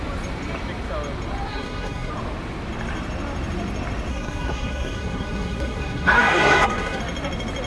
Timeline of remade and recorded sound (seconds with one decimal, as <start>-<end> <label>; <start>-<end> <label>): 0.0-1.5 recorded; 1.5-2.1 remade; 2.1-4.1 recorded; 4.1-7.0 remade; 7.0-7.7 recorded